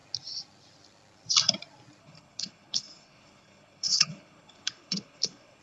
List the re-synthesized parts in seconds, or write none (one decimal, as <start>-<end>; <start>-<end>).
2.0-5.6